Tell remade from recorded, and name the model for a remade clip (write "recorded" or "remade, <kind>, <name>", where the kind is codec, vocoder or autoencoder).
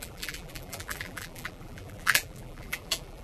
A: remade, vocoder, BigVGAN v2